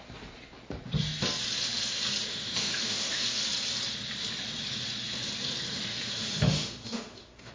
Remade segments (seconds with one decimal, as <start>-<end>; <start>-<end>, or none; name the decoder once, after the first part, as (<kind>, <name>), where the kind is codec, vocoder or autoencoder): 2.3-3.4 (autoencoder, DAC-VAE); 5.9-7.5